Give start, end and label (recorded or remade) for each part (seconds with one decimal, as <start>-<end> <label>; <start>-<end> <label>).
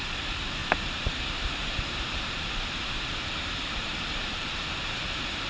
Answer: 0.0-0.6 recorded; 0.6-3.9 remade; 3.9-5.5 recorded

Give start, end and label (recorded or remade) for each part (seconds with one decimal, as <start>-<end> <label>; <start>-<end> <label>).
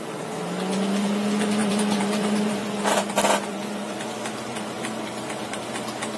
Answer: 0.0-1.6 recorded; 1.6-2.8 remade; 2.8-3.5 recorded; 3.5-4.1 remade; 4.1-4.5 recorded; 4.5-5.6 remade; 5.6-6.2 recorded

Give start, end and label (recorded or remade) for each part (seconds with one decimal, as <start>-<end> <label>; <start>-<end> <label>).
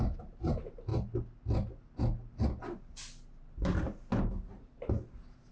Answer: 0.0-0.9 remade; 0.9-4.2 recorded; 4.2-5.5 remade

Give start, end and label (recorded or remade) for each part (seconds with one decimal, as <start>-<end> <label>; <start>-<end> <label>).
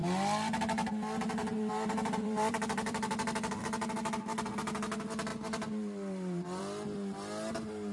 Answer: 0.0-1.4 recorded; 1.4-3.6 remade; 3.6-5.3 recorded; 5.3-6.6 remade; 6.6-7.9 recorded